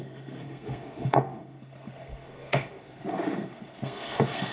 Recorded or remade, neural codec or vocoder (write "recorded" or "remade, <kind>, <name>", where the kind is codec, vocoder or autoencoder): remade, codec, SNAC